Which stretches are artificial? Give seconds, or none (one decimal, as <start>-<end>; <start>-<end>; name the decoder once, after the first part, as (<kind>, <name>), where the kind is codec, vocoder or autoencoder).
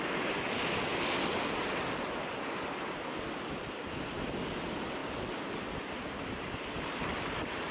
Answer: none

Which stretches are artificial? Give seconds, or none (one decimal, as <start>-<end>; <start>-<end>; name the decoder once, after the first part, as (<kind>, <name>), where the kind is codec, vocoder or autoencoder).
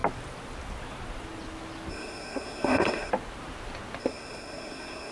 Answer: 1.9-3.1 (codec, SNAC); 4.0-5.1